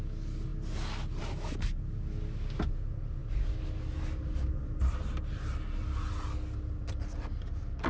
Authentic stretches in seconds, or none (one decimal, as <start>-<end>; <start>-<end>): 0.0-7.9